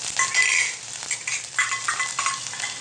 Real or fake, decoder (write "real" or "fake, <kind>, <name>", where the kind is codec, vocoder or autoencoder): real